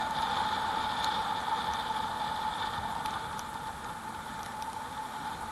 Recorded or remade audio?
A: recorded